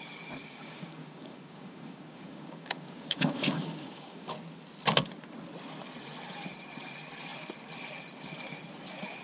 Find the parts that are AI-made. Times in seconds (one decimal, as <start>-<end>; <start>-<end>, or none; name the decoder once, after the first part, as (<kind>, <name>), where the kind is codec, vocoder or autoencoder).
0.4-4.3 (codec, DAC)